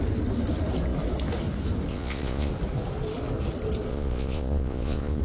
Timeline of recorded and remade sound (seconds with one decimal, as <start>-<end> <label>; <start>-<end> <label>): 0.0-1.9 recorded; 1.9-2.5 remade; 2.5-3.9 recorded; 3.9-5.2 remade